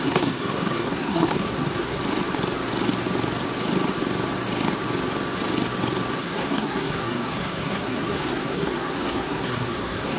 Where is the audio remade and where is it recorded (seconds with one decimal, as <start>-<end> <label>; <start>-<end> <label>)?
0.0-2.0 remade; 2.0-6.1 recorded; 6.1-10.2 remade